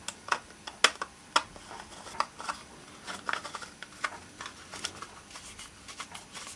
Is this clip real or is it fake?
real